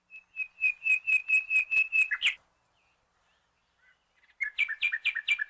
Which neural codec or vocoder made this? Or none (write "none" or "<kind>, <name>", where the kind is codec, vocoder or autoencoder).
none